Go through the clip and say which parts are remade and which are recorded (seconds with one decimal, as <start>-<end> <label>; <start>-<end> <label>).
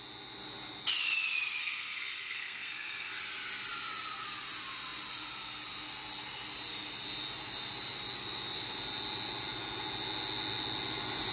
0.0-1.6 recorded; 1.6-3.2 remade; 3.2-11.3 recorded